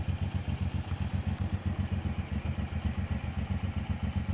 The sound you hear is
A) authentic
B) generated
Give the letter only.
A